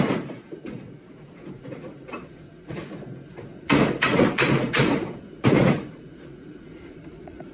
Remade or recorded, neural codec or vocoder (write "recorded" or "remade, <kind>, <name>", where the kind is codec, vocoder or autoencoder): remade, vocoder, Vocos